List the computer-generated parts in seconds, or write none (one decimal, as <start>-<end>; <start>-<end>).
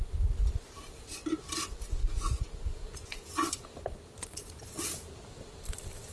2.0-3.5; 4.2-4.9